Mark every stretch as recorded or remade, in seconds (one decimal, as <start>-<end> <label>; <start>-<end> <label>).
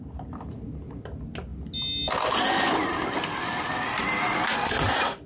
0.0-5.3 recorded